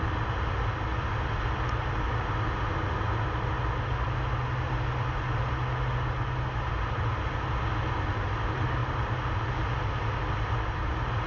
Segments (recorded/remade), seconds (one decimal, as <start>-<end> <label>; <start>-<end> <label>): 0.0-11.3 recorded